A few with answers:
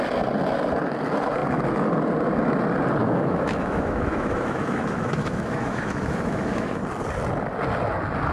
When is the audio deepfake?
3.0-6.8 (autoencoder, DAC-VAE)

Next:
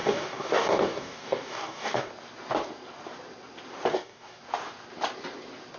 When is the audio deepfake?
0.0-2.1 (codec, DAC); 3.9-4.4

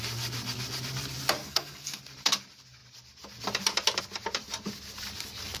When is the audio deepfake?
1.4-2.0 (codec, SNAC)

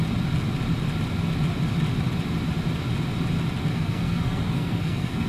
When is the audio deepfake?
3.7-5.3 (codec, SNAC)

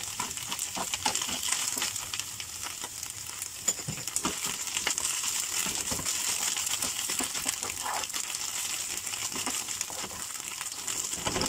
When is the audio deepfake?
4.2-5.0 (vocoder, BigVGAN v2); 9.2-9.7

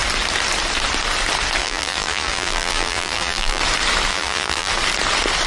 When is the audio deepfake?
1.6-3.6 (vocoder, BigVGAN v2); 4.1-4.7

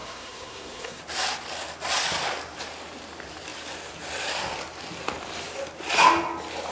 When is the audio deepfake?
0.0-1.0 (codec, SNAC)